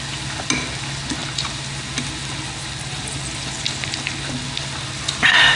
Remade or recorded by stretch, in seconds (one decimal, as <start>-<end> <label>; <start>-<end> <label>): 0.0-5.6 recorded